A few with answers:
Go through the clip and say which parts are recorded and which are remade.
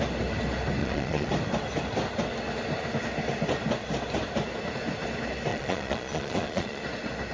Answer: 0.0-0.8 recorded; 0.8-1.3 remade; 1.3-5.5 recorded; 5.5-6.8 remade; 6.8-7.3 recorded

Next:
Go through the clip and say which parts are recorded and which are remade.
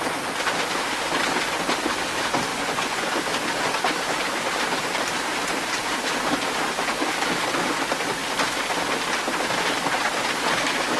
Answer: 0.0-2.5 recorded; 2.5-3.1 remade; 3.1-11.0 recorded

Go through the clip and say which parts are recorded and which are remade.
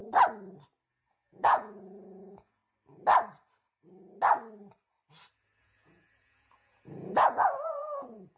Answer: 0.0-0.9 recorded; 0.9-2.6 remade; 2.6-5.6 recorded; 5.6-8.4 remade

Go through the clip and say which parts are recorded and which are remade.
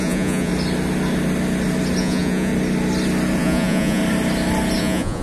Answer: 0.0-0.5 remade; 0.5-2.0 recorded; 2.0-2.5 remade; 2.5-3.4 recorded; 3.4-4.0 remade; 4.0-4.8 recorded; 4.8-5.2 remade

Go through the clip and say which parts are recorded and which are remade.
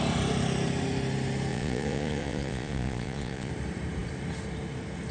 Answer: 0.0-1.5 recorded; 1.5-3.5 remade; 3.5-5.1 recorded